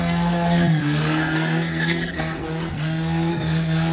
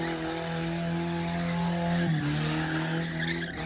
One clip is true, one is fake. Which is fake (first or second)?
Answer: first